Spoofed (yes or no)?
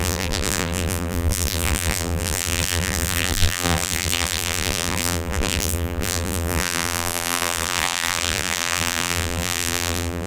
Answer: yes